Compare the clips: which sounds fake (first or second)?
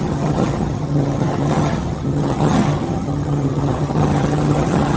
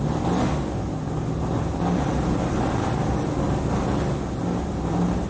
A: first